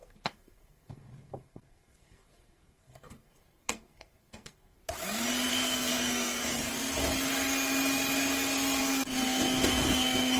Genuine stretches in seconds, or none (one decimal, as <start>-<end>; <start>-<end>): 4.8-5.5; 6.6-8.8